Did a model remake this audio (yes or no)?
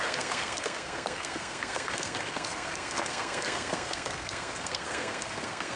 yes